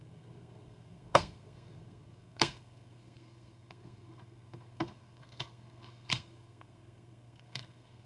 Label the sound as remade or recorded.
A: remade